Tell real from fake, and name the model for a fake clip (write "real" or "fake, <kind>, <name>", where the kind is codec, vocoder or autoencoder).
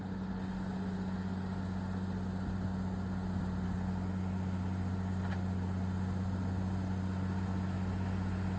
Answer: real